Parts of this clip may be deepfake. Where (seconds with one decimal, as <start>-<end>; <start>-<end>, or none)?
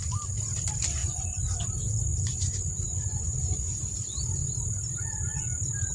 1.0-1.5; 2.1-3.9